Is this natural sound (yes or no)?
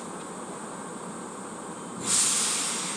yes